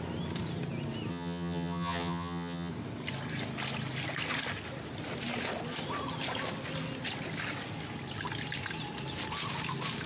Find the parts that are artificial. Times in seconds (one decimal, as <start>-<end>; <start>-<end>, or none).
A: 1.1-2.7